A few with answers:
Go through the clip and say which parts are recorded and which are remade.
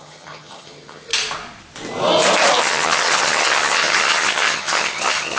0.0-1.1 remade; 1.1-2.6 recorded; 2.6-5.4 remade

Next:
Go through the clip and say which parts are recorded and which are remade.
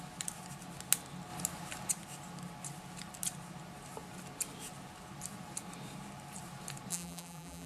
0.0-6.9 recorded; 6.9-7.7 remade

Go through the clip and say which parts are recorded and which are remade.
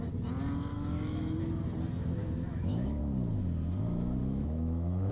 0.0-0.7 recorded; 0.7-1.4 remade; 1.4-2.2 recorded; 2.2-3.0 remade; 3.0-4.2 recorded; 4.2-5.1 remade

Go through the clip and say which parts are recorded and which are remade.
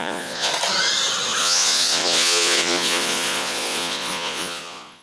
0.0-0.5 remade; 0.5-1.4 recorded; 1.4-5.0 remade